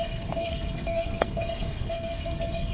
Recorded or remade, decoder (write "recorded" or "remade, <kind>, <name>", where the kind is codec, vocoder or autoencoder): remade, codec, SNAC